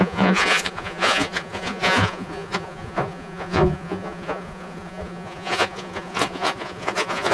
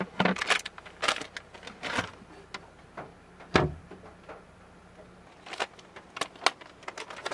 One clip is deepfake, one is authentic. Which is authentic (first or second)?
second